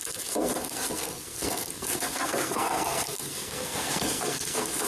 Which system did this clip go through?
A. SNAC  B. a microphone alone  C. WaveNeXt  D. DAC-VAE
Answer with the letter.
A